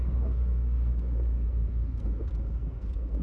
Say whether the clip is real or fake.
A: fake